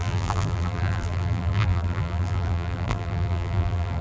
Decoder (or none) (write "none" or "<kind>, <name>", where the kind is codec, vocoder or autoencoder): vocoder, BigVGAN v2